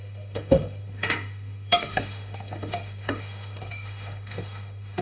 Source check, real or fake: fake